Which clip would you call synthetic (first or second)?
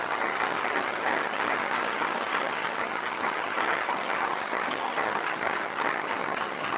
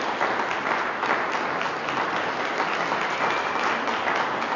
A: first